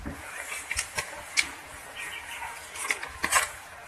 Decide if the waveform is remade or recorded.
remade